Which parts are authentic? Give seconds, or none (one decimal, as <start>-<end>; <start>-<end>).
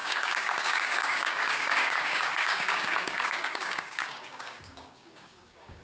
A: none